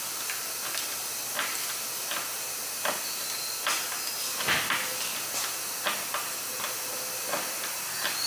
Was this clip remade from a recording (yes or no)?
no